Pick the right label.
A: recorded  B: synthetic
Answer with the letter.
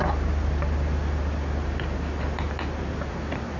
A